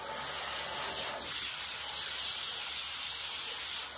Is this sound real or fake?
real